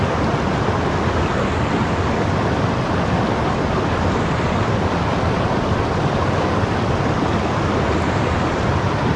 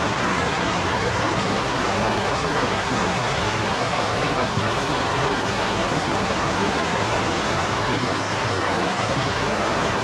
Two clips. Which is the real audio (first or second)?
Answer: first